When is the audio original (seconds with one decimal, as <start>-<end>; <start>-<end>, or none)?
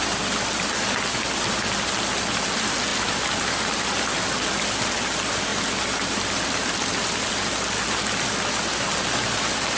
0.0-2.9; 4.2-5.5; 6.9-9.8